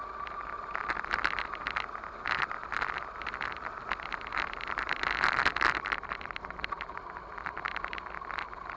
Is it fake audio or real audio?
real